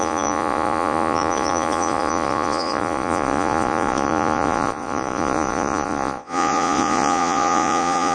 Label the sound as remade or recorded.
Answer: remade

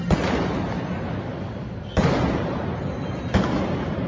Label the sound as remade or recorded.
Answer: recorded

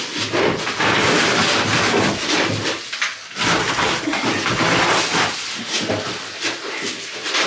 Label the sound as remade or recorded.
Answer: recorded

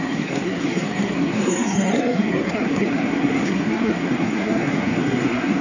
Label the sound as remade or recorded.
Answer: remade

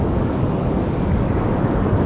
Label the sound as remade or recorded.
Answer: remade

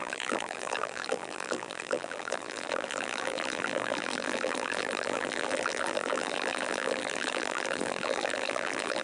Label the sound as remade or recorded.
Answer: remade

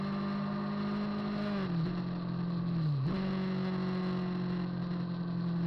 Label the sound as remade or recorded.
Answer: recorded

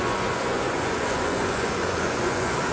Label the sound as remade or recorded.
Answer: remade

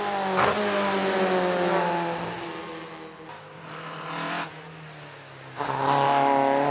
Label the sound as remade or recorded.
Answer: recorded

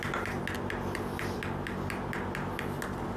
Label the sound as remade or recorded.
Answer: recorded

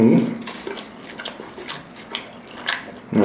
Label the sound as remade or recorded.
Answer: recorded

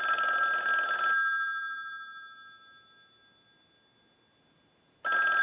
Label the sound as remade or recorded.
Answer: recorded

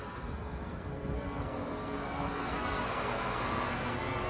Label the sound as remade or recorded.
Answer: remade